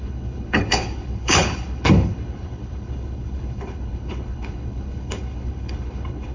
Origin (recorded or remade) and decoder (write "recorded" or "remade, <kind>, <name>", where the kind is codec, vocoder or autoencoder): remade, codec, HILCodec